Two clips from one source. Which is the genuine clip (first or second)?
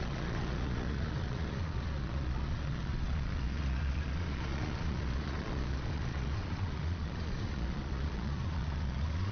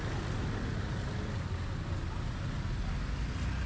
second